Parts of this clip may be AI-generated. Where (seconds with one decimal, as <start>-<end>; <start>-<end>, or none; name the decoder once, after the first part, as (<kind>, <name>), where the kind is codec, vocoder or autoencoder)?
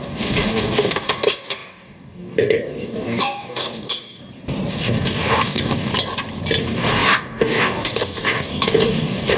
0.0-4.2 (codec, DAC); 4.7-5.9; 6.6-9.4